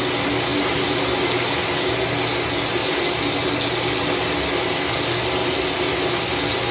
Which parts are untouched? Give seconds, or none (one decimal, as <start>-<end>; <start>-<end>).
0.0-6.7

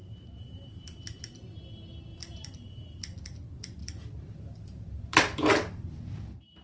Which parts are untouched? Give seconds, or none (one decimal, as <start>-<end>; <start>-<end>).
0.7-2.1; 3.0-3.8; 5.5-6.6

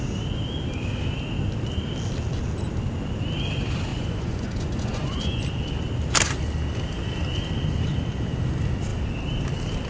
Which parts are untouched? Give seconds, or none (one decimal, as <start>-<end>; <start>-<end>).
0.0-3.9; 5.4-9.9

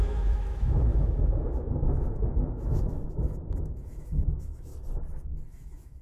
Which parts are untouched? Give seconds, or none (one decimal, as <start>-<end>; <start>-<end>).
4.7-5.5

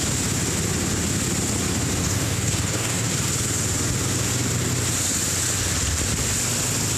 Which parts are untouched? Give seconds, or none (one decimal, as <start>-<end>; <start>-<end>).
0.0-2.0; 3.1-7.0